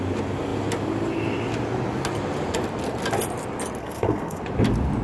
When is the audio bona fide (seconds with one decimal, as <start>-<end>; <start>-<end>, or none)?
0.0-3.8; 4.4-5.0

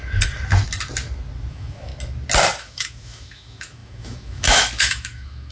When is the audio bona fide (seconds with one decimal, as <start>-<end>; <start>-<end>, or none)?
0.0-1.5; 1.9-2.6